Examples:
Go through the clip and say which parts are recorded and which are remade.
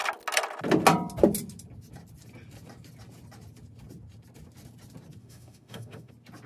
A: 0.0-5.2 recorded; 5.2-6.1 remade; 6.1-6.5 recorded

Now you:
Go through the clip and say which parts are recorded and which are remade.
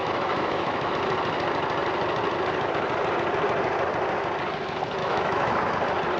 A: 0.0-0.9 remade; 0.9-5.0 recorded; 5.0-5.6 remade; 5.6-6.2 recorded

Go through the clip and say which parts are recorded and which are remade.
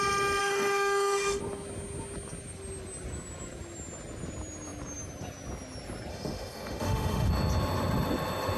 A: 0.0-0.4 recorded; 0.4-1.4 remade; 1.4-6.1 recorded; 6.1-7.3 remade; 7.3-8.6 recorded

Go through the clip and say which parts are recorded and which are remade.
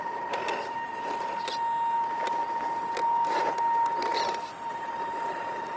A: 0.0-5.8 recorded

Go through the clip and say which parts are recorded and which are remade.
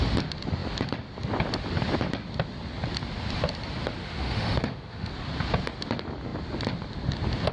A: 0.0-4.0 recorded; 4.0-5.1 remade; 5.1-7.5 recorded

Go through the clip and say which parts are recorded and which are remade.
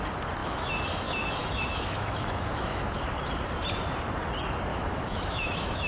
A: 0.0-0.4 recorded; 0.4-3.3 remade; 3.3-4.7 recorded; 4.7-5.9 remade